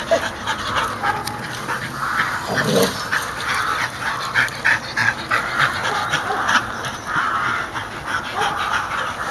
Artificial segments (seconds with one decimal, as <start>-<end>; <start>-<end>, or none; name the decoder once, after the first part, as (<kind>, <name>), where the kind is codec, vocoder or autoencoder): 3.1-4.6 (vocoder, BigVGAN v2); 8.3-8.9